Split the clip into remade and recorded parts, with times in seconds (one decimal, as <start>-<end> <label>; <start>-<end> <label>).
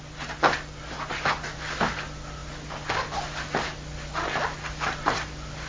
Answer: 0.0-5.7 recorded